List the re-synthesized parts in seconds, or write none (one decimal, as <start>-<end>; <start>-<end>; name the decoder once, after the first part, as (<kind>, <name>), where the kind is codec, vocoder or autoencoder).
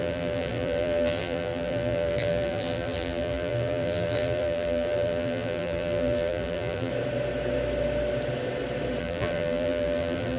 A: 0.0-6.9 (vocoder, BigVGAN v2); 9.0-10.4